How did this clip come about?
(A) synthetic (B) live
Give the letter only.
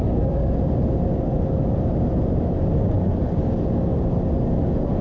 B